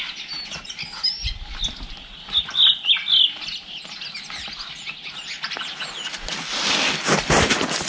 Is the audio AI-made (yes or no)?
no